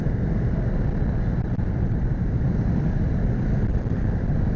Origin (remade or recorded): recorded